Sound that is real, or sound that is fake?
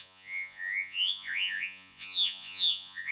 fake